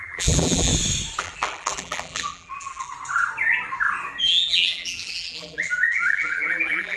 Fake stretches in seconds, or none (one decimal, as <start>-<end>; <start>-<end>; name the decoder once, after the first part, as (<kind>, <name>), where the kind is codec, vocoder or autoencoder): 0.0-0.7 (vocoder, BigVGAN v2); 1.2-2.9; 4.2-7.0